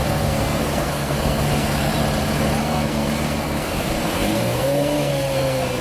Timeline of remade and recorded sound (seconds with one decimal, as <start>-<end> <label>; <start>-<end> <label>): 0.0-1.9 remade; 1.9-2.6 recorded; 2.6-5.8 remade